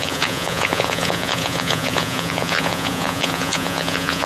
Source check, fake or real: fake